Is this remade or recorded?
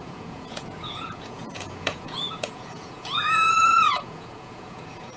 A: remade